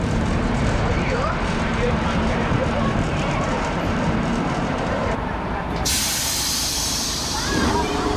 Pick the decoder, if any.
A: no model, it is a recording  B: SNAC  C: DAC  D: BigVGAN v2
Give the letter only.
D